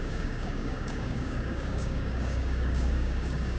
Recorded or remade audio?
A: remade